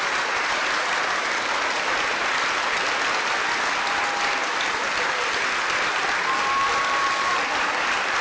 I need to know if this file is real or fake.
real